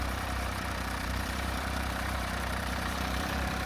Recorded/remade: remade